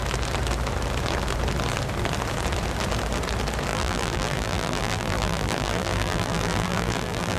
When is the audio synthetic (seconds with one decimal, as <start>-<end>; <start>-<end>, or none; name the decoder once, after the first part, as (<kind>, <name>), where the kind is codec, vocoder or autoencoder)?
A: 3.7-7.4 (vocoder, BigVGAN v2)